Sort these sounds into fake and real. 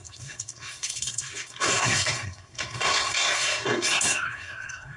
fake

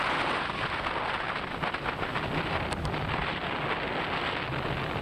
real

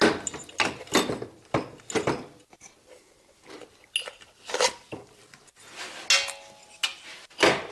real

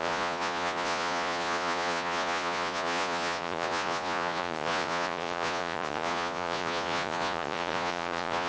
fake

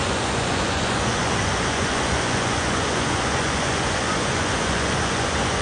fake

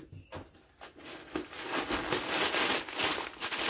real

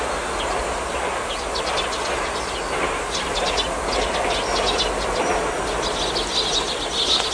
real